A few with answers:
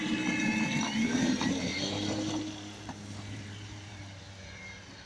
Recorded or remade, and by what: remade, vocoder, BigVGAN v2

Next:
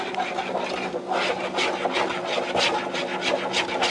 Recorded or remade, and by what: recorded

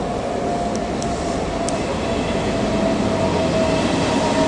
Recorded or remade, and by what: recorded